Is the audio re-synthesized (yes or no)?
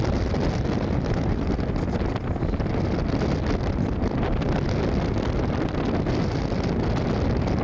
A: no